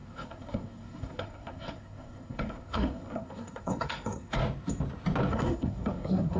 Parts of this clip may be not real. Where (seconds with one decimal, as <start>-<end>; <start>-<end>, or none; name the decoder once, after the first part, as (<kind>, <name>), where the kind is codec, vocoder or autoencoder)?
0.0-4.4 (codec, SNAC); 5.3-6.4